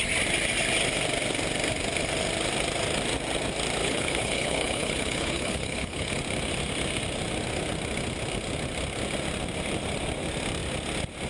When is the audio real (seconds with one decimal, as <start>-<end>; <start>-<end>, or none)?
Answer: 0.0-3.8; 6.1-11.3